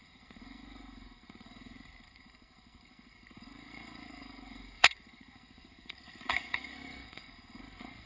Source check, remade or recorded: remade